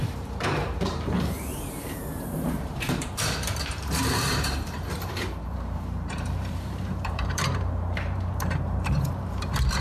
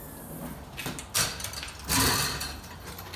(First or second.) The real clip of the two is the second